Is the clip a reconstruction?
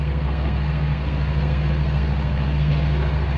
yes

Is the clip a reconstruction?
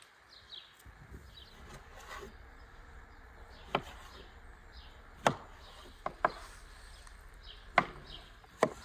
no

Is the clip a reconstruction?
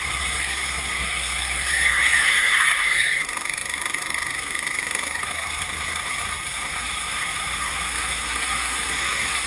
yes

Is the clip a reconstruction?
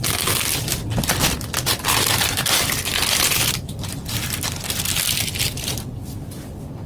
no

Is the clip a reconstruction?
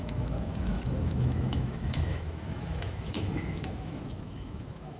yes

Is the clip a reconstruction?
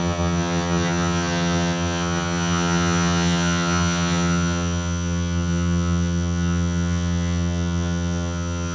yes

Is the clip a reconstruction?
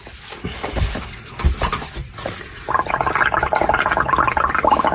no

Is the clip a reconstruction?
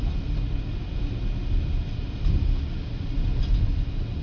no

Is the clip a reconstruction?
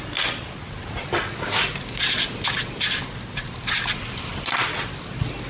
no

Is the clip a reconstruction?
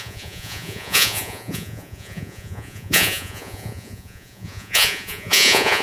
yes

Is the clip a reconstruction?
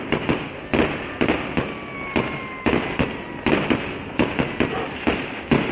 no